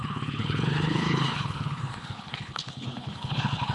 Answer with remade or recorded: remade